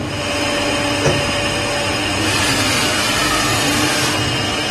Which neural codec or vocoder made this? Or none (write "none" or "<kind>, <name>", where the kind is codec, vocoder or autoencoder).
none